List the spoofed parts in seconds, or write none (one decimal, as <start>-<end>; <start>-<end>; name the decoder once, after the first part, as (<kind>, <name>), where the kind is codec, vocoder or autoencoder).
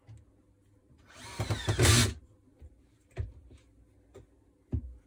none